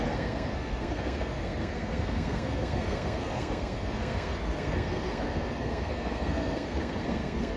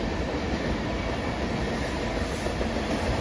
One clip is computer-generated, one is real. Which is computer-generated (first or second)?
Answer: first